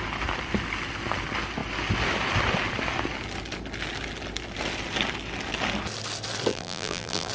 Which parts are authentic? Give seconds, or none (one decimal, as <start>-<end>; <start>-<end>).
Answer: 0.0-6.5

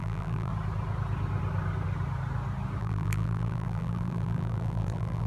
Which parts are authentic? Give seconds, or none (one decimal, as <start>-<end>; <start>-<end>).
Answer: 0.5-2.8

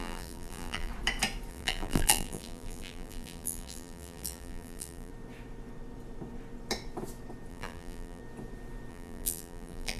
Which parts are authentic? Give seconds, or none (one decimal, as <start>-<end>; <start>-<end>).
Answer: 0.9-1.5; 5.1-7.5; 8.2-8.9